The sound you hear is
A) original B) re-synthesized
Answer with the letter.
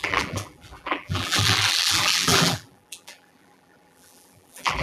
B